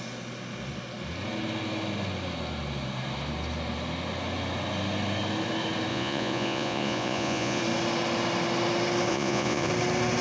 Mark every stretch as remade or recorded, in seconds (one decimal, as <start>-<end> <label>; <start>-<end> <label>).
0.0-5.9 recorded; 5.9-7.6 remade; 7.6-9.1 recorded; 9.1-9.7 remade; 9.7-10.2 recorded